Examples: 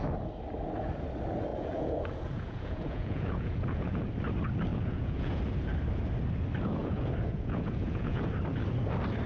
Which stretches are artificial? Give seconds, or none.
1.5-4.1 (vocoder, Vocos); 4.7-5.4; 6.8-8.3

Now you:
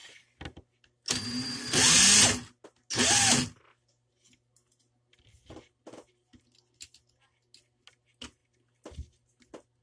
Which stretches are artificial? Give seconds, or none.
none

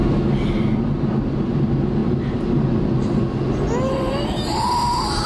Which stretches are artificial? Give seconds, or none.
none

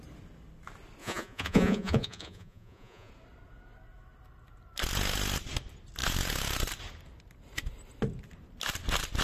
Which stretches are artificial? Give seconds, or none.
1.0-3.1 (vocoder, Vocos)

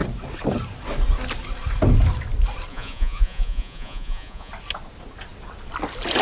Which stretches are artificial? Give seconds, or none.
2.7-4.5 (vocoder, Vocos)